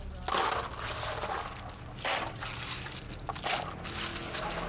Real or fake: real